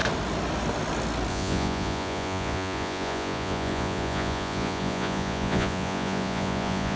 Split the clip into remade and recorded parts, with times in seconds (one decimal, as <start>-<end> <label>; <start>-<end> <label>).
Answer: 0.0-1.3 recorded; 1.3-7.0 remade